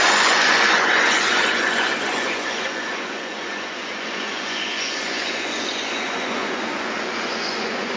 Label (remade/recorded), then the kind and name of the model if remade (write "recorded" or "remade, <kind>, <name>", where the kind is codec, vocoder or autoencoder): remade, vocoder, Vocos